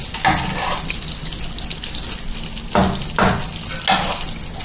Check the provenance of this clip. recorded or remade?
recorded